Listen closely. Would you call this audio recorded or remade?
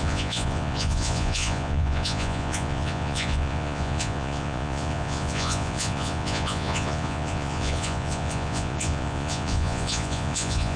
remade